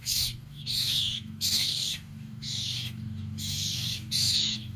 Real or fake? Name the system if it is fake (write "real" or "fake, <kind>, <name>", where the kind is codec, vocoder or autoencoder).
fake, codec, DAC